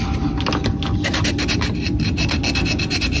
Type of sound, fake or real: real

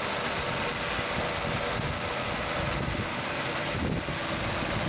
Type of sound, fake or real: real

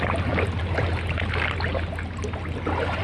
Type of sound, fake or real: real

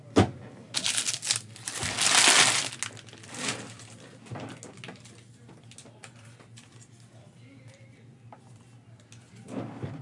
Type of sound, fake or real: real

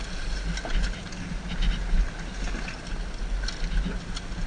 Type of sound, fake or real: real